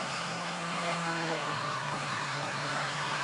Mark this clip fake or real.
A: fake